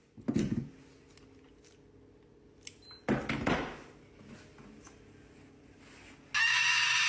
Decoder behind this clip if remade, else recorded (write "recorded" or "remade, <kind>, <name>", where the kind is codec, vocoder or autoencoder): recorded